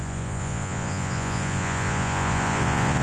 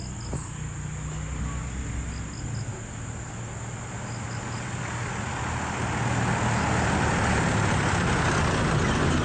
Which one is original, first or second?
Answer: second